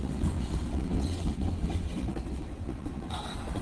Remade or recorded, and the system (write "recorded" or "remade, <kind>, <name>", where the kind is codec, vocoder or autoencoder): remade, vocoder, WaveNeXt